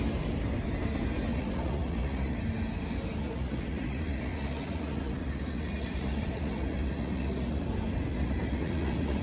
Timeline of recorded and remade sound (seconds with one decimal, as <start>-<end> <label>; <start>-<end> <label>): 0.0-1.3 recorded; 1.3-2.4 remade; 2.4-3.2 recorded; 3.2-7.7 remade; 7.7-8.1 recorded; 8.1-9.2 remade